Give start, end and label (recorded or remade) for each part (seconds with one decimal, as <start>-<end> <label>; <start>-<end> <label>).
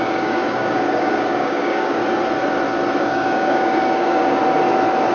0.0-2.0 remade; 2.0-3.0 recorded; 3.0-4.4 remade; 4.4-5.1 recorded